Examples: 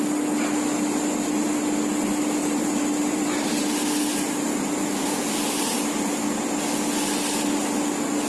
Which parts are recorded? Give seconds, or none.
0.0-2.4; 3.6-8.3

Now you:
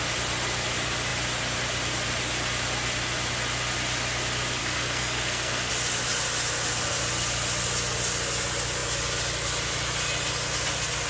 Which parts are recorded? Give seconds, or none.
0.0-4.6; 5.7-11.1

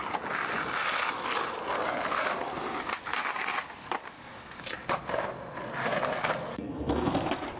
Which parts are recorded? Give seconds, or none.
0.0-4.1; 4.6-6.5; 7.1-7.6

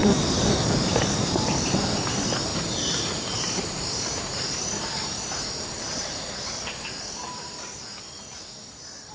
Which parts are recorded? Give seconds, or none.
2.0-2.5; 7.6-9.1

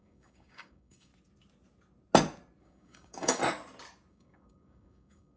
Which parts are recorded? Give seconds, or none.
1.1-2.6; 3.4-4.1

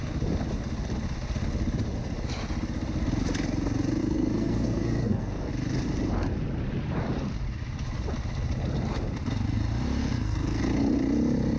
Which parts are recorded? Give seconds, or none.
0.0-4.0; 5.5-10.0; 10.6-11.6